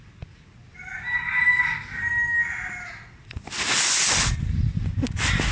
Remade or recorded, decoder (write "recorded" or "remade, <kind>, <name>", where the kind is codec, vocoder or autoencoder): recorded